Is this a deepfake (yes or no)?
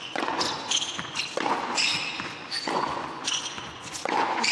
yes